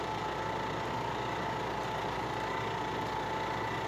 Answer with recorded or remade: recorded